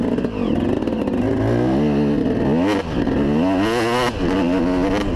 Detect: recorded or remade recorded